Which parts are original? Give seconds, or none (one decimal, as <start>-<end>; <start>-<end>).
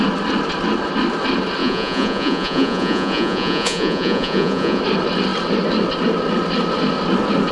0.0-1.6; 4.8-7.5